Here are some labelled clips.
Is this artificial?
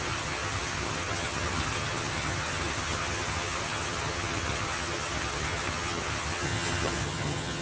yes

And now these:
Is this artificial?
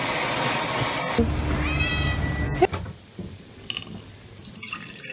no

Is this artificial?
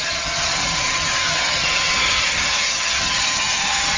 yes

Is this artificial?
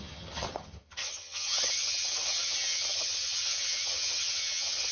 yes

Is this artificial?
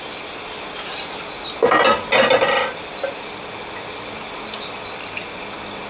no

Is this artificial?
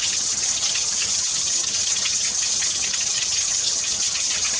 yes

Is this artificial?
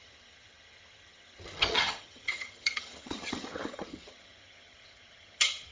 yes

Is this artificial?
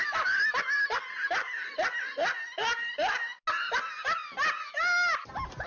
no